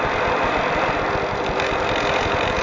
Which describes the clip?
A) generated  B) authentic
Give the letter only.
B